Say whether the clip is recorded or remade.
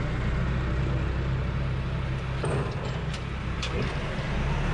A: recorded